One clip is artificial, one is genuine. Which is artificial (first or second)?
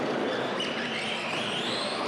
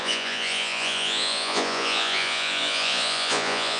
second